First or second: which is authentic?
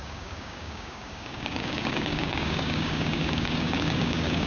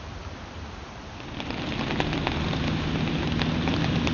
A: second